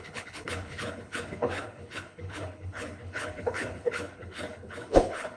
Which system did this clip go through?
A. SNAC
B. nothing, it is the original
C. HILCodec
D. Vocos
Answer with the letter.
C